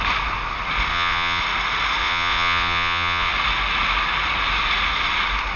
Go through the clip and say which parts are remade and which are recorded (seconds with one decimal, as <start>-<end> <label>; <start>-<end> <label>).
0.0-0.9 recorded; 0.9-1.4 remade; 1.4-2.0 recorded; 2.0-3.3 remade; 3.3-5.6 recorded